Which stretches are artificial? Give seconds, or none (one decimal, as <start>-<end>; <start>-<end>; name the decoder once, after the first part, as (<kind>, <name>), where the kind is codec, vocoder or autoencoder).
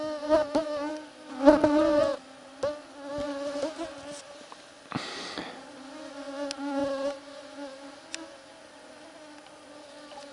none